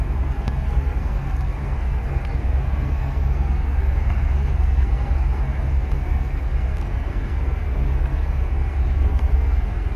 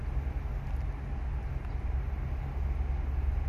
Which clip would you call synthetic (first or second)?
first